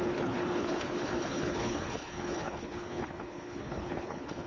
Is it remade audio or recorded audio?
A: remade